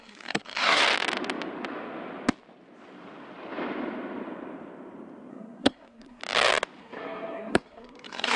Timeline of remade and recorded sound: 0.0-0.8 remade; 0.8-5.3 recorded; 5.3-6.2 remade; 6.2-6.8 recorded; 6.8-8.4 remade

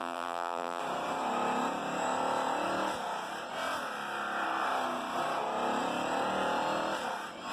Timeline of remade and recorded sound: 0.0-0.8 remade; 0.8-7.5 recorded